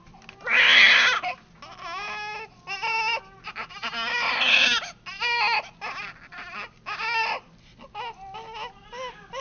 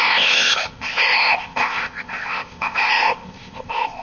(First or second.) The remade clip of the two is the second